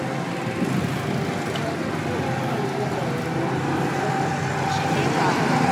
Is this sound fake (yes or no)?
no